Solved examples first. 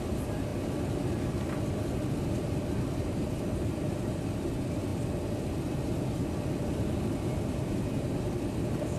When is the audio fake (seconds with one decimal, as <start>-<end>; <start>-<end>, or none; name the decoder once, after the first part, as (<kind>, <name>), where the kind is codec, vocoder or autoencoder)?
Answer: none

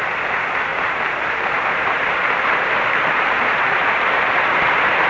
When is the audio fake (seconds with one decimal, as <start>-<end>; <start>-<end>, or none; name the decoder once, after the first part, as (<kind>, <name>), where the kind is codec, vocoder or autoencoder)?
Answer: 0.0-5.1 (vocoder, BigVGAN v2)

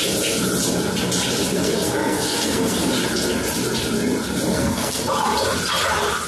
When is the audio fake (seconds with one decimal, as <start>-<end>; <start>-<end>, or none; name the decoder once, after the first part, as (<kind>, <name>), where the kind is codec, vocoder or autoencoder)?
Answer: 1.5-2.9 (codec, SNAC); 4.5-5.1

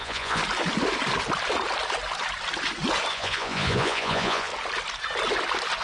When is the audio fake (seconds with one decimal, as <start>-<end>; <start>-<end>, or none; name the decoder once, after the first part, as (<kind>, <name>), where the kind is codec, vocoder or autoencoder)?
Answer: 0.0-0.4 (vocoder, Vocos); 3.1-4.5

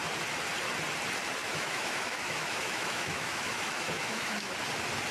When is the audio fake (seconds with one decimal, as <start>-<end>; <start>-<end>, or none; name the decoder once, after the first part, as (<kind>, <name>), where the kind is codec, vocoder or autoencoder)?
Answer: 1.4-4.5 (autoencoder, DAC-VAE)

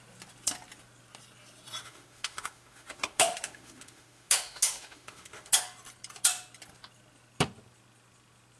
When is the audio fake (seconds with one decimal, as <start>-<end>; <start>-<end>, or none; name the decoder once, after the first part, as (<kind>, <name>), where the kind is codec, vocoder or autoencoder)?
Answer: 1.8-5.5 (autoencoder, DAC-VAE)

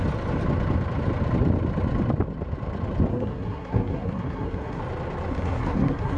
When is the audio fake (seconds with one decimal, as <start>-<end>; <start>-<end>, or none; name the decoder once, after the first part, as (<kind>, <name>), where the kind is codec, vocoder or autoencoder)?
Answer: 3.1-4.8 (codec, SNAC); 5.3-6.2

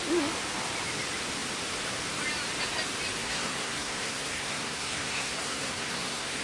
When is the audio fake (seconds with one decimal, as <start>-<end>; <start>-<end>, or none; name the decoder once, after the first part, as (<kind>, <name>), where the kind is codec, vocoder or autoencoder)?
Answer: 3.2-6.4 (codec, SNAC)